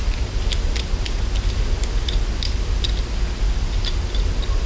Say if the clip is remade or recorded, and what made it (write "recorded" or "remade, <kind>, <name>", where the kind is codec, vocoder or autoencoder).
recorded